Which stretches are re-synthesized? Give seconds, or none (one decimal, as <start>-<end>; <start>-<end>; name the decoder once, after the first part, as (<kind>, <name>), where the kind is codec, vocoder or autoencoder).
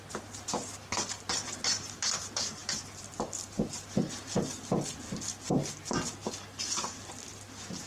none